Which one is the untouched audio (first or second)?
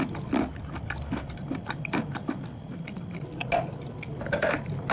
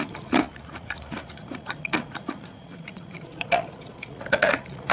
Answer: first